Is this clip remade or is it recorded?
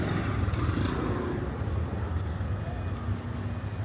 recorded